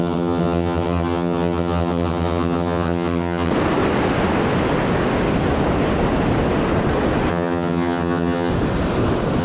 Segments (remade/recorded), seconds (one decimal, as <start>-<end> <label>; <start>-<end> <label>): 0.0-3.5 remade; 3.5-7.3 recorded; 7.3-8.5 remade; 8.5-9.4 recorded